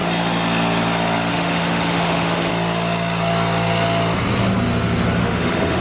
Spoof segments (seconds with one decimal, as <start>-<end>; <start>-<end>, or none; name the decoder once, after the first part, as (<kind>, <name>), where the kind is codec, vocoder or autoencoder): 1.3-2.5 (autoencoder, DAC-VAE); 5.2-5.8